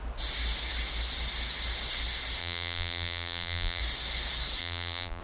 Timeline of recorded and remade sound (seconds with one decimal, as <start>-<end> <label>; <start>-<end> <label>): 0.0-2.4 recorded; 2.4-3.8 remade; 3.8-4.6 recorded; 4.6-5.2 remade